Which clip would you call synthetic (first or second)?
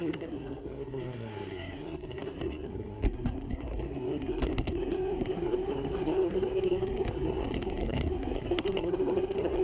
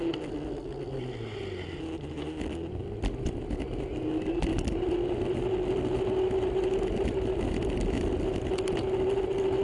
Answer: first